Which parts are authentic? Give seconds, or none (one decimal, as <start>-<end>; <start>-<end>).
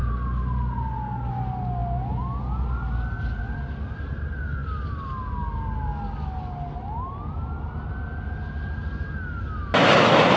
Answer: 0.0-10.4